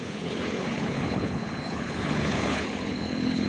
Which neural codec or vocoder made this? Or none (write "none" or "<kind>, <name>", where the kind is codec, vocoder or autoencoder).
codec, HILCodec